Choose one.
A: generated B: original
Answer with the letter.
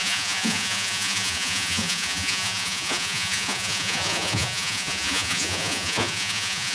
A